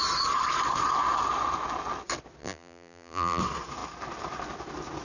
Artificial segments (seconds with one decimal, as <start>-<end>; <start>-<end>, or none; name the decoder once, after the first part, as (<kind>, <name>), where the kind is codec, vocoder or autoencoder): 2.4-3.4 (vocoder, BigVGAN v2)